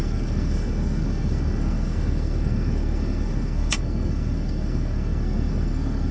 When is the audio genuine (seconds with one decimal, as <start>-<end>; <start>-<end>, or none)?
none